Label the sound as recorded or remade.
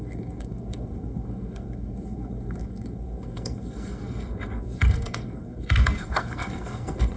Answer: remade